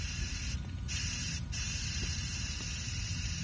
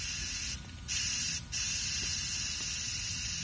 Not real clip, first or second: first